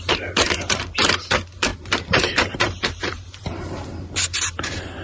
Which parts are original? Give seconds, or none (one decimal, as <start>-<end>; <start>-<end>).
none